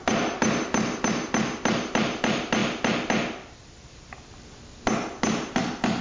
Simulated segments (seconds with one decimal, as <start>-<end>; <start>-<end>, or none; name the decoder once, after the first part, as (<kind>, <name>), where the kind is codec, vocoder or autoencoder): none